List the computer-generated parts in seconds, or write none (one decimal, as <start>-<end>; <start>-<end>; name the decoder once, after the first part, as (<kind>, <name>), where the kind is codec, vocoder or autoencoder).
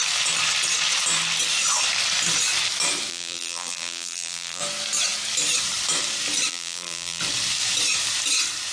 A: 3.1-4.6 (vocoder, BigVGAN v2); 6.5-7.2